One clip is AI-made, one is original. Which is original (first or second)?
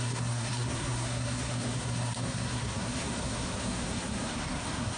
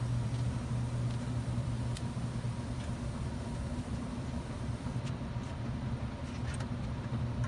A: second